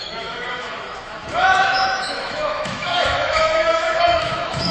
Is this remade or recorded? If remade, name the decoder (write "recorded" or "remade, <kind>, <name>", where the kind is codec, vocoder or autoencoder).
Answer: remade, autoencoder, DAC-VAE